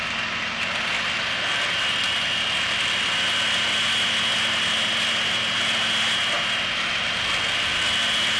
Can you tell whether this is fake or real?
real